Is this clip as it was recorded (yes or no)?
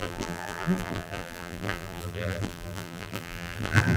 no